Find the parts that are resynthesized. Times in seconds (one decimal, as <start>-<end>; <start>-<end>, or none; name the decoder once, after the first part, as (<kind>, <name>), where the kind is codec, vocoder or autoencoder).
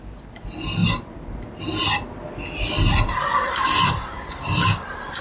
none